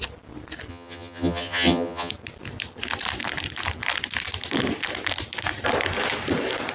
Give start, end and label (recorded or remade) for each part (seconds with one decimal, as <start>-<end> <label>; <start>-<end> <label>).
0.0-0.7 recorded; 0.7-2.1 remade; 2.1-6.7 recorded